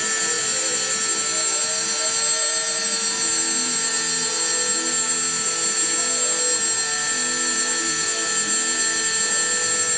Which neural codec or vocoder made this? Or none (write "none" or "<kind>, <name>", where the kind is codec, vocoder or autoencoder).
none